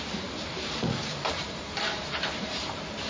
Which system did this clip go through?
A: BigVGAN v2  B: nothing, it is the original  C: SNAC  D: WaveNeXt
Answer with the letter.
A